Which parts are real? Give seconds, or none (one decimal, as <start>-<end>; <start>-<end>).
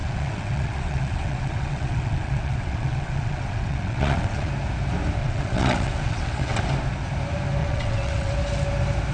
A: 4.5-5.2; 6.6-7.6; 8.3-9.1